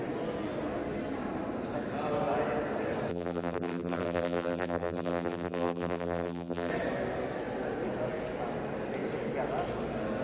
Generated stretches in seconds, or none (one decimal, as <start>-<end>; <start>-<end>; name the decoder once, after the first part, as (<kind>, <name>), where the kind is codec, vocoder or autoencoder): 3.1-6.7 (vocoder, BigVGAN v2)